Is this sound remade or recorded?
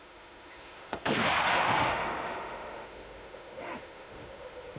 remade